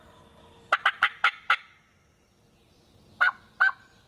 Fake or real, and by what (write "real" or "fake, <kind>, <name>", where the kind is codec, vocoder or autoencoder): fake, vocoder, BigVGAN v2